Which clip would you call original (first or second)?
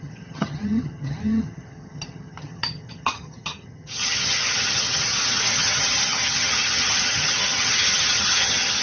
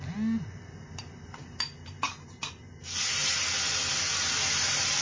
second